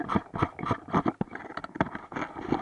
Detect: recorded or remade recorded